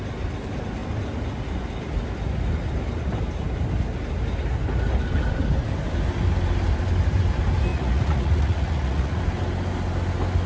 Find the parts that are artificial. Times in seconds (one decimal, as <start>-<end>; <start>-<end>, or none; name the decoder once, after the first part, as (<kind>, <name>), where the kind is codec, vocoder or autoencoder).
7.7-9.2 (vocoder, Vocos)